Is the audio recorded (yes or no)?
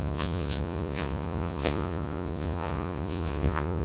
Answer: no